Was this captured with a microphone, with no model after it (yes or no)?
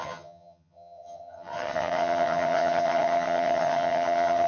no